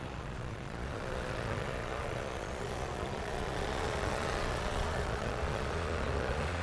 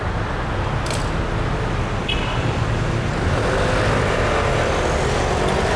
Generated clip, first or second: first